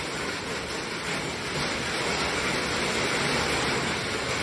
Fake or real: real